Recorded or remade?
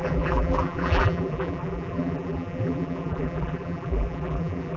remade